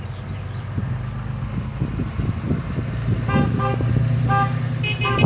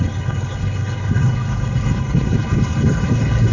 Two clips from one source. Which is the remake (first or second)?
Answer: second